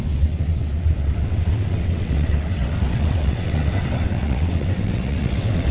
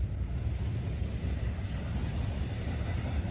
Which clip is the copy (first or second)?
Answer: first